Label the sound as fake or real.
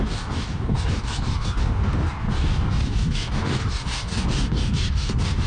fake